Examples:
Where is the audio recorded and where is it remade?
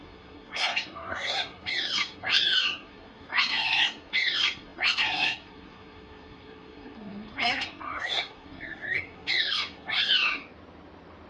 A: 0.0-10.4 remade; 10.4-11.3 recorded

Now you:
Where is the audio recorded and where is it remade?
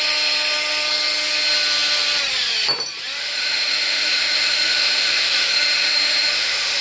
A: 0.0-3.2 recorded; 3.2-6.8 remade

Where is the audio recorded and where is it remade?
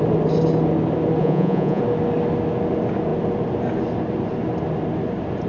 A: 0.0-1.2 recorded; 1.2-1.8 remade; 1.8-5.5 recorded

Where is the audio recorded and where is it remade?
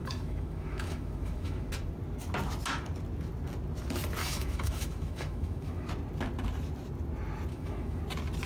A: 0.0-1.7 remade; 1.7-4.2 recorded; 4.2-5.9 remade; 5.9-7.5 recorded; 7.5-8.0 remade; 8.0-8.5 recorded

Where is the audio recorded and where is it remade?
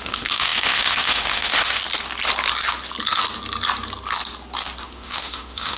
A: 0.0-1.8 remade; 1.8-4.8 recorded; 4.8-5.8 remade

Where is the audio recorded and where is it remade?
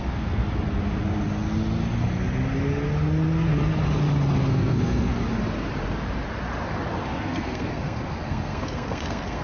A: 0.0-0.4 remade; 0.4-4.5 recorded; 4.5-5.1 remade; 5.1-7.2 recorded; 7.2-9.4 remade